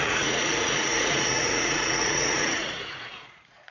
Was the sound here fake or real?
fake